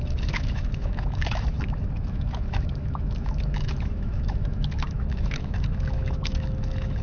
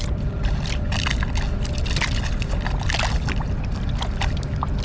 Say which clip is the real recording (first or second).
second